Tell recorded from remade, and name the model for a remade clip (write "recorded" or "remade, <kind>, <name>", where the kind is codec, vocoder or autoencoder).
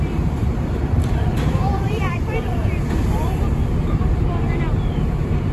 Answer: remade, vocoder, BigVGAN v2